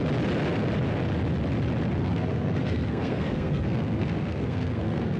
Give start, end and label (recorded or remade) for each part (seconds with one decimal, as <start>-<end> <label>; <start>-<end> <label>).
0.0-2.0 recorded; 2.0-5.2 remade